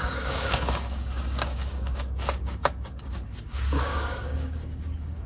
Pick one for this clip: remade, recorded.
remade